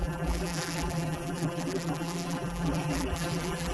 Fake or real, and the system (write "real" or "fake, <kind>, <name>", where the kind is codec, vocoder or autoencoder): fake, vocoder, BigVGAN v2